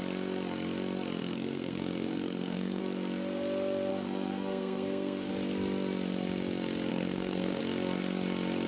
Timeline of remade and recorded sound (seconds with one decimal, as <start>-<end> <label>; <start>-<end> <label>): 0.0-1.2 recorded; 1.2-2.8 remade; 2.8-3.9 recorded; 3.9-5.3 remade; 5.3-6.9 recorded; 6.9-7.6 remade; 7.6-8.7 recorded